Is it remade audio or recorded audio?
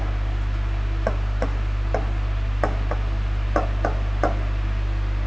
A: recorded